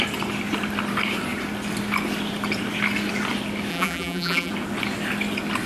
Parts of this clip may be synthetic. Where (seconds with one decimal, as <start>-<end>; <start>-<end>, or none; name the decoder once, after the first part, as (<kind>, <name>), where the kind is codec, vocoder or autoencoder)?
3.7-4.5 (vocoder, BigVGAN v2)